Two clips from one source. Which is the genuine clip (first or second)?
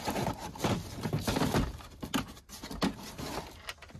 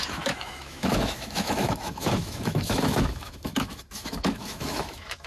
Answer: first